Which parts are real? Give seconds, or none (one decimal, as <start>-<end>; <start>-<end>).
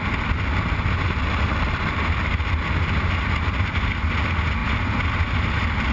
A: 0.0-5.9